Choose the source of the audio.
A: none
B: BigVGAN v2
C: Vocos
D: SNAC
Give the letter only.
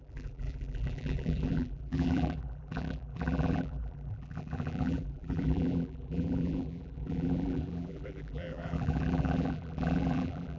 B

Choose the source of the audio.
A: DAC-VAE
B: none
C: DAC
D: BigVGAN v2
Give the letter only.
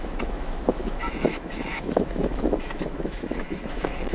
A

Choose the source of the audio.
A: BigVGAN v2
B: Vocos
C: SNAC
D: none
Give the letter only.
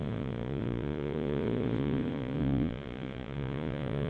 B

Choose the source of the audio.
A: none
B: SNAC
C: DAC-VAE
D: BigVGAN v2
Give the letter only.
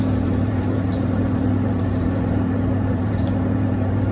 D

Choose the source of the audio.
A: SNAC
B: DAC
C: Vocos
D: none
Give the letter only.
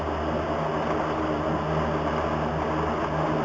D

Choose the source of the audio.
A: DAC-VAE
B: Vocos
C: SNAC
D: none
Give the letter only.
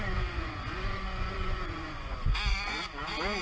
B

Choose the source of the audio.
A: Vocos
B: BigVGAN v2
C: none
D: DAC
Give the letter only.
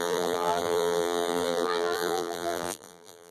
B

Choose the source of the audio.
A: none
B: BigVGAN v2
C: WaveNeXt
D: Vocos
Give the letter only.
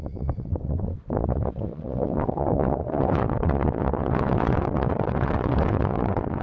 C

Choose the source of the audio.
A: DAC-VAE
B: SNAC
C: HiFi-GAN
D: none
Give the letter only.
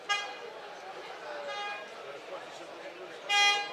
D